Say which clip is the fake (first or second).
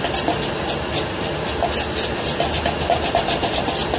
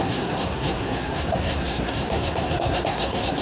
second